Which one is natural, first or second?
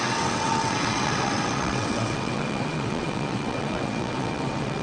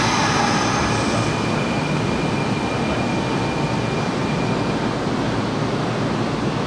second